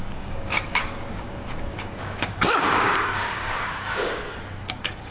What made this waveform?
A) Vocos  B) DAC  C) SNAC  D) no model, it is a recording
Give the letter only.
B